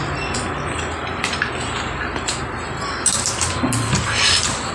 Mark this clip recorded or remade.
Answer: recorded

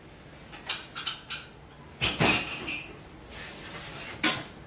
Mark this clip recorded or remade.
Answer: recorded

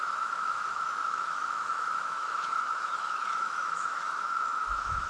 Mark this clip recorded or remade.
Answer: remade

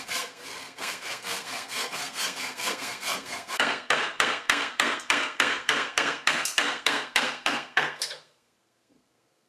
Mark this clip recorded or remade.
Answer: remade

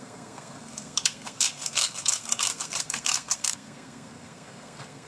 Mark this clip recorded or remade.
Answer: remade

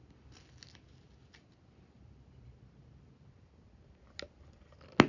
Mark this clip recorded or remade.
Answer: recorded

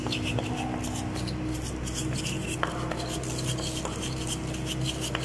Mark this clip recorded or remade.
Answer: recorded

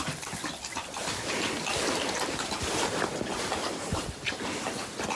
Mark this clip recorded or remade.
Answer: recorded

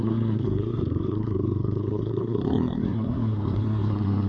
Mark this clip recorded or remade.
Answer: remade